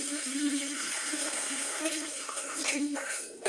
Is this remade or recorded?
remade